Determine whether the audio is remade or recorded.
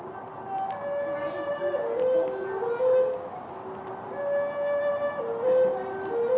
recorded